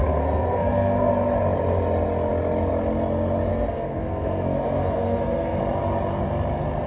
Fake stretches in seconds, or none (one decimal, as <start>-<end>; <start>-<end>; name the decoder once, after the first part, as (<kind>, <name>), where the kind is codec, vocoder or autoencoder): 0.0-1.1 (codec, SNAC); 3.5-5.6